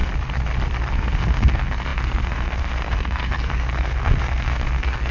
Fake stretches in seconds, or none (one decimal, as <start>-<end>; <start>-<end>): 0.9-5.1